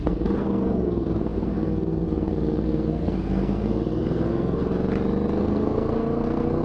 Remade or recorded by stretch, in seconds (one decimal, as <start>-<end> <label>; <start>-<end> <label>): 0.0-4.7 remade; 4.7-5.4 recorded; 5.4-6.6 remade